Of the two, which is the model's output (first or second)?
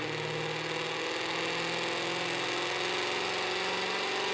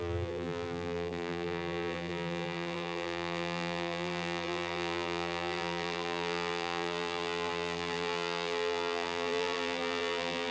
second